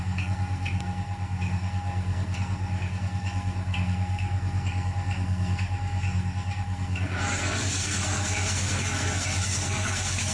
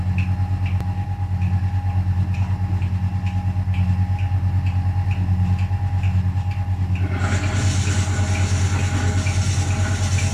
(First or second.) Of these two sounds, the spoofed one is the first